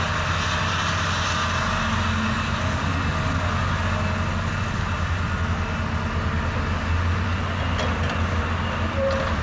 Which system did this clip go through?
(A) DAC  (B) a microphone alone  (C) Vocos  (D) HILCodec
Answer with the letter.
B